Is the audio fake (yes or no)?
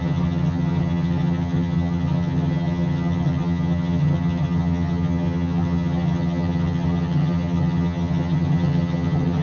yes